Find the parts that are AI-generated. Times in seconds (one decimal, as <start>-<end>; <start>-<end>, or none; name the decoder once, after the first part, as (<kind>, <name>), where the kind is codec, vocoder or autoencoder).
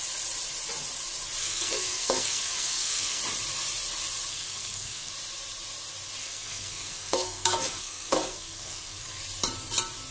1.4-3.2 (codec, SNAC); 4.3-5.1; 6.2-9.2